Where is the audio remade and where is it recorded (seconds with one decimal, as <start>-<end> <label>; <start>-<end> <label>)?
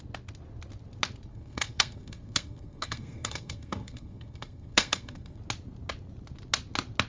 0.0-1.3 recorded; 1.3-5.4 remade; 5.4-7.1 recorded